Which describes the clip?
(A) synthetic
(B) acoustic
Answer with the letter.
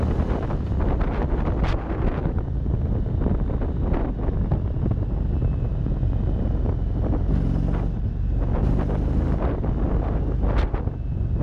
B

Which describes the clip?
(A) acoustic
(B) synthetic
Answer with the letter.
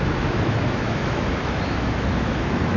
B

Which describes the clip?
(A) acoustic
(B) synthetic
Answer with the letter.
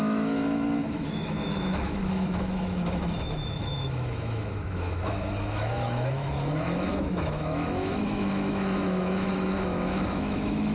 B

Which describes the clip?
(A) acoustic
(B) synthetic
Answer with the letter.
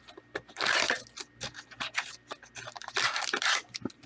A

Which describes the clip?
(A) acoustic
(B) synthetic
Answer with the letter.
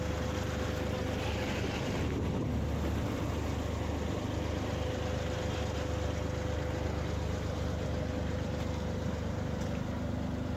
A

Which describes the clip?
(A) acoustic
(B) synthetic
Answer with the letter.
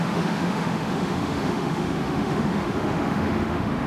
B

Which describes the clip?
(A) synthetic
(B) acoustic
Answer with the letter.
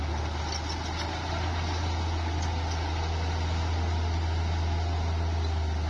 B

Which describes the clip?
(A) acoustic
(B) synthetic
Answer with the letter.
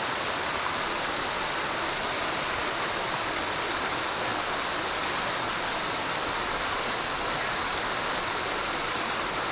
A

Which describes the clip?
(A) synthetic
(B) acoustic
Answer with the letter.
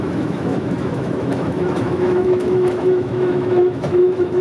A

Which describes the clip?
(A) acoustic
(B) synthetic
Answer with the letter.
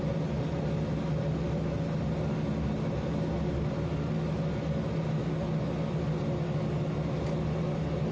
A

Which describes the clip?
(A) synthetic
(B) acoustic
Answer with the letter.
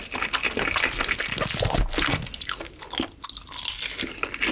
B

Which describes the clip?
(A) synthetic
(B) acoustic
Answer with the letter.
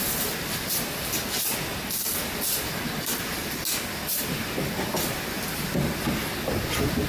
B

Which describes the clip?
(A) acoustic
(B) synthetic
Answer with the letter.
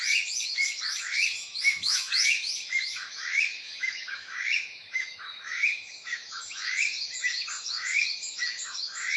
B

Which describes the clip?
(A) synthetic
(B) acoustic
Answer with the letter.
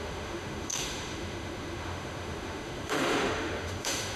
A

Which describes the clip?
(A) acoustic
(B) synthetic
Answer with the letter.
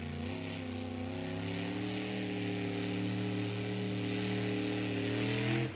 A